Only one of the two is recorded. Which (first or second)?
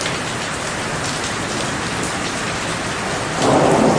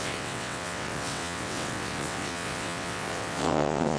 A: first